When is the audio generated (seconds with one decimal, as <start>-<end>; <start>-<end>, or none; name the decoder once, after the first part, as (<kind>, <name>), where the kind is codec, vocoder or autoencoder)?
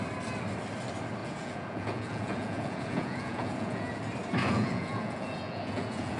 1.2-4.0 (vocoder, Vocos); 4.4-6.2